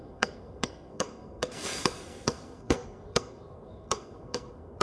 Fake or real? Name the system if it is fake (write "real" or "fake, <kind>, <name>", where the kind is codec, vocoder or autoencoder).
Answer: fake, codec, SNAC